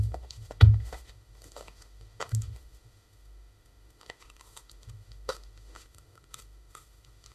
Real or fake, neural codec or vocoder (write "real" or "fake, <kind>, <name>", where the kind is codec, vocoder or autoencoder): fake, autoencoder, DAC-VAE